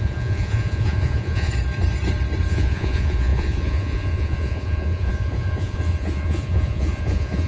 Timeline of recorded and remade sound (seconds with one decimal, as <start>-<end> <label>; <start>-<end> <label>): 0.0-1.5 remade; 1.5-2.5 recorded; 2.5-7.5 remade